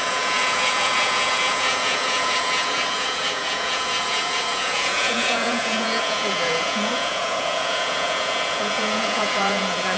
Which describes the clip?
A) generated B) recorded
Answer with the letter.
A